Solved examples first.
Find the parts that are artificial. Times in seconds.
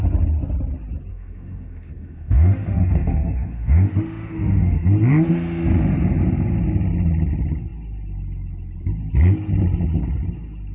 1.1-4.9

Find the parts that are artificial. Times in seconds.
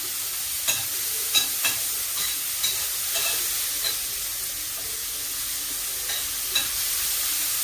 none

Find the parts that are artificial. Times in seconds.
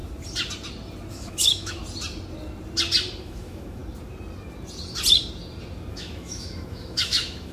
1.1-1.8; 3.2-3.8; 5.9-7.5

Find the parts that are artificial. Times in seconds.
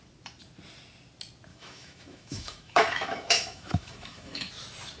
1.5-4.5